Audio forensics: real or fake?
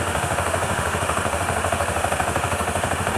fake